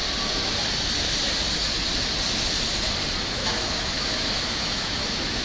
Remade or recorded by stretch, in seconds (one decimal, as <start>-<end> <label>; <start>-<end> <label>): 0.0-3.2 recorded; 3.2-5.4 remade